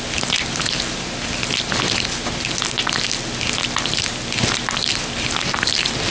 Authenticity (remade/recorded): recorded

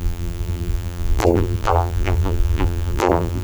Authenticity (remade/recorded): remade